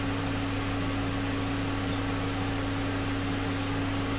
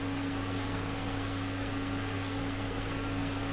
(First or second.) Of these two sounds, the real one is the first